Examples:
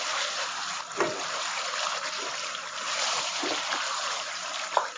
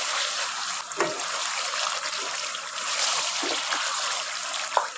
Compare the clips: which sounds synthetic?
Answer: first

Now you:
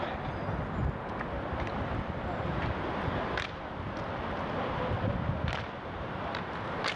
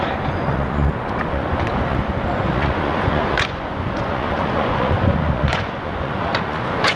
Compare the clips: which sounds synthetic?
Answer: second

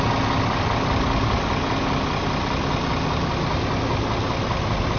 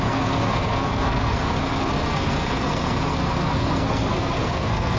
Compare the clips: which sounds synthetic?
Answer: second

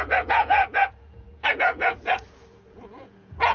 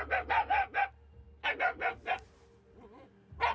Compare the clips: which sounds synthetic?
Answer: first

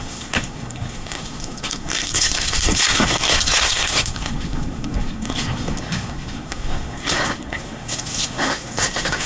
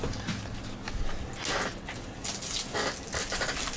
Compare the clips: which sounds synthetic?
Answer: first